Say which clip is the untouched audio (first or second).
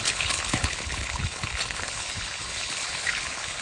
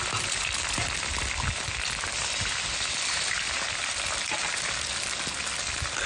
second